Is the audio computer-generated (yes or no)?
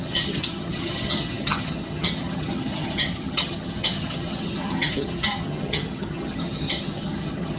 yes